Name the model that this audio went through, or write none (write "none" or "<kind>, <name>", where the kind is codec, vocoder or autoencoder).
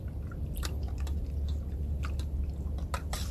none